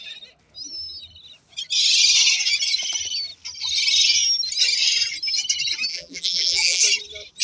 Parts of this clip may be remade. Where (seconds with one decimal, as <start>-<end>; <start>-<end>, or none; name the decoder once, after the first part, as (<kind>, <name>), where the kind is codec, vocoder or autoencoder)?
5.9-6.8 (vocoder, BigVGAN v2)